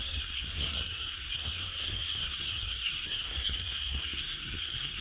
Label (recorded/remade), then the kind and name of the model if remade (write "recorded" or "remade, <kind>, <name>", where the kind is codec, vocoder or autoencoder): remade, codec, SNAC